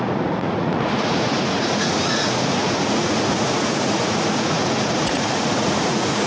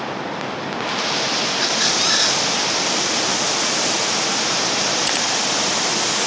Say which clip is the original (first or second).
second